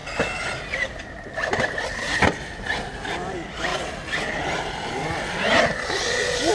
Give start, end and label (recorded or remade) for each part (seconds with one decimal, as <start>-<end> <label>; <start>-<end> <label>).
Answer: 0.0-6.5 recorded